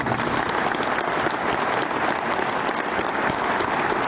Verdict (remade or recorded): recorded